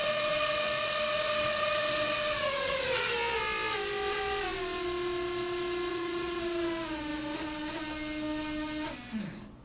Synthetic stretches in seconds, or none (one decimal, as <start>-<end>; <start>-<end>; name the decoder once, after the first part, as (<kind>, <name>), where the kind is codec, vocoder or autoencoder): 0.0-3.1 (vocoder, WaveNeXt); 5.9-6.4

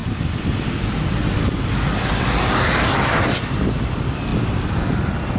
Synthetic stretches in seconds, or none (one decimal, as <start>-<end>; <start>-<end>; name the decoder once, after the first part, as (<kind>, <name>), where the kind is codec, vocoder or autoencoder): none

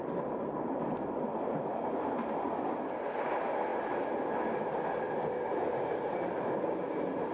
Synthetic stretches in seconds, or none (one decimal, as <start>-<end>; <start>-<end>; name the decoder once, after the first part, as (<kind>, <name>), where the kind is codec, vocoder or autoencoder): none

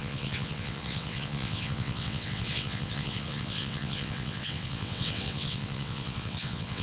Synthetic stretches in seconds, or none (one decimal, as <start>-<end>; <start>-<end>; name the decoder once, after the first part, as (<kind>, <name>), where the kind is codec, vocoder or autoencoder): 0.0-6.8 (vocoder, WaveNeXt)